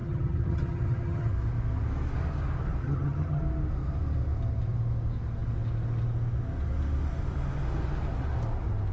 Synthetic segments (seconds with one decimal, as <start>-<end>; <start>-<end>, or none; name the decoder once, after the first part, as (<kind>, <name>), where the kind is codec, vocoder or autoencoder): 0.0-1.3 (vocoder, HiFi-GAN); 2.8-3.4